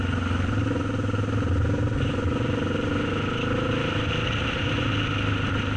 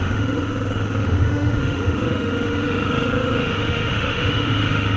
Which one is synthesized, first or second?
second